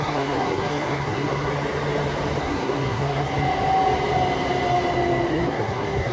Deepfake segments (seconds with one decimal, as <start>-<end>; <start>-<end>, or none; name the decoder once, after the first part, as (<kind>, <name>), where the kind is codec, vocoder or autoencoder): 0.0-1.5 (codec, SNAC); 2.4-3.3; 5.3-6.1